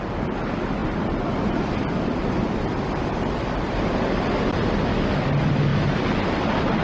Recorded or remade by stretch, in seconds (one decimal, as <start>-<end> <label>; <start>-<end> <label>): 0.0-6.8 recorded